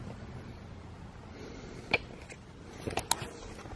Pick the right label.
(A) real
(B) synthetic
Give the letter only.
A